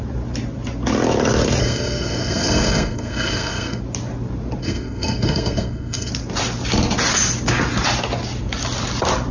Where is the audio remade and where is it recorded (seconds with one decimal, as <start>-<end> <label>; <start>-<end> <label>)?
0.0-1.6 recorded; 1.6-3.8 remade; 3.8-4.6 recorded; 4.6-6.1 remade; 6.1-9.3 recorded